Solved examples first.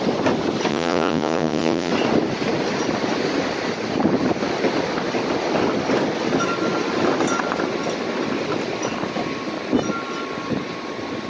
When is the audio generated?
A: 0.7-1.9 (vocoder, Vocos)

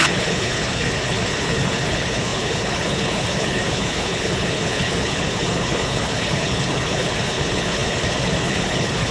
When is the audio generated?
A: 0.0-9.1 (codec, HILCodec)